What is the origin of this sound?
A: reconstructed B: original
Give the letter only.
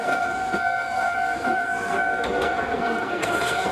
A